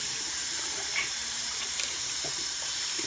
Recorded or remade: remade